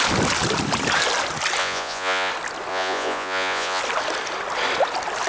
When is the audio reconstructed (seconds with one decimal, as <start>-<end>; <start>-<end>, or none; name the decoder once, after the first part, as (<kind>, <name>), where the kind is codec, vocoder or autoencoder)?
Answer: 1.6-2.3 (vocoder, Vocos); 2.7-3.8